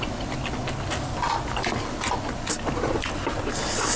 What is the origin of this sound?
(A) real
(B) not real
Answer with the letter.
A